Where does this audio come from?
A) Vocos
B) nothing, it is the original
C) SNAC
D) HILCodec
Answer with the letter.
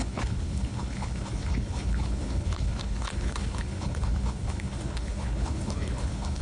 D